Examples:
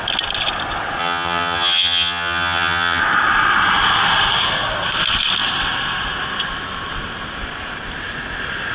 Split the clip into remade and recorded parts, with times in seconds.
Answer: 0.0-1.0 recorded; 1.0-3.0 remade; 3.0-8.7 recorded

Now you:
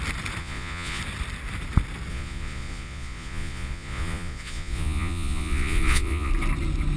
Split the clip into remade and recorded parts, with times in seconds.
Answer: 0.0-0.4 recorded; 0.4-1.0 remade; 1.0-2.1 recorded; 2.1-6.3 remade; 6.3-7.0 recorded

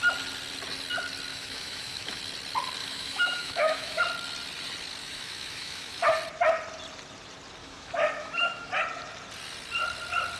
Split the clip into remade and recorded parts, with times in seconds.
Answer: 0.0-1.3 recorded; 1.3-2.2 remade; 2.2-2.8 recorded; 2.8-4.0 remade; 4.0-5.0 recorded; 5.0-6.0 remade; 6.0-7.6 recorded; 7.6-8.7 remade; 8.7-10.4 recorded